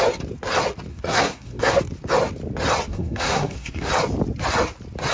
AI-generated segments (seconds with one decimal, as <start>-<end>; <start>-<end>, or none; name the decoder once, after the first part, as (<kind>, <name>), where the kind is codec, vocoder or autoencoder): 0.9-1.8 (codec, SNAC); 2.9-3.9